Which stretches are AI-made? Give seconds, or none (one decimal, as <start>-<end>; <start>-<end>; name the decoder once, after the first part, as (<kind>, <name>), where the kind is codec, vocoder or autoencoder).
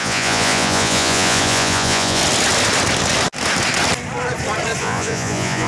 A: 0.0-2.2 (vocoder, Vocos); 4.8-5.7